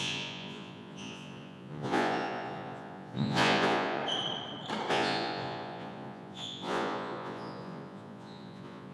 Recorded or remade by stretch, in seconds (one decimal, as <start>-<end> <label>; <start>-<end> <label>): 0.0-4.0 remade; 4.0-4.9 recorded; 4.9-8.9 remade